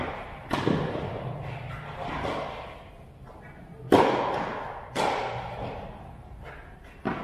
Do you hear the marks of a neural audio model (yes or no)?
no